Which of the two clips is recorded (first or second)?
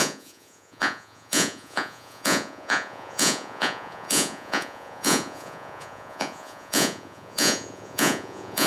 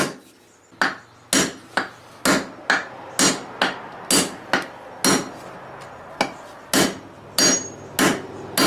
second